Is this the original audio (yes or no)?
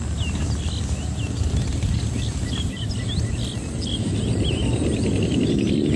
yes